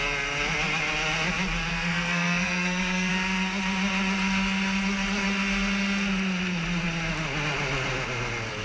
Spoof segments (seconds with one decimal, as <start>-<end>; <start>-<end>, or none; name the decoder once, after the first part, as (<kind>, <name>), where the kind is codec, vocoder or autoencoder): 1.7-3.1 (codec, SNAC)